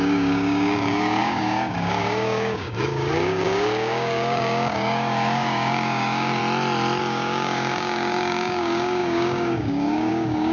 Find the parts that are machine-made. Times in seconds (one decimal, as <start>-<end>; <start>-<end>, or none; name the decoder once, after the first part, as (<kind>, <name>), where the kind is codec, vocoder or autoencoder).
0.0-6.4 (codec, DAC); 7.0-10.5